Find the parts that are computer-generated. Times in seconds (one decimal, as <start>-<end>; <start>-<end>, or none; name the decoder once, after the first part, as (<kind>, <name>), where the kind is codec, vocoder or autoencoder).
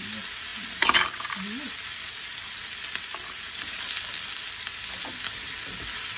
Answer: none